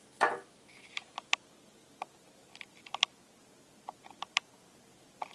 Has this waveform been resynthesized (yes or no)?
no